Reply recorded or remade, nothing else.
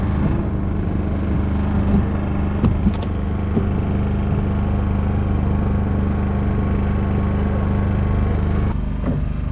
recorded